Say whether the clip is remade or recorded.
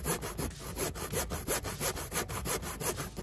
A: recorded